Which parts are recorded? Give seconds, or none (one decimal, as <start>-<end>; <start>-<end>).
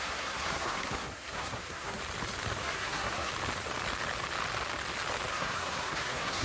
2.0-2.6; 3.3-5.3